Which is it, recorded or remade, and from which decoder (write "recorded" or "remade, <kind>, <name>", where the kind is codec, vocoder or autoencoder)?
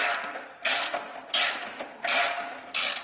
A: recorded